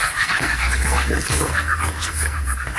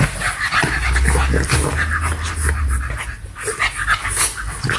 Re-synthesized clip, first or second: first